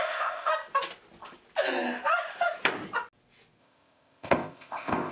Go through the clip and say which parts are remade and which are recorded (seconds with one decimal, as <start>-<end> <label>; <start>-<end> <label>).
0.0-0.5 remade; 0.5-3.6 recorded; 3.6-5.1 remade